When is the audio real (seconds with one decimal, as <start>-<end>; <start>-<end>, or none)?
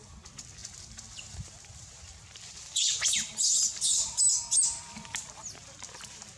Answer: 0.0-6.4